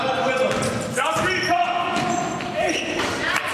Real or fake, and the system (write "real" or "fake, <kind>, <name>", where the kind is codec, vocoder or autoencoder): real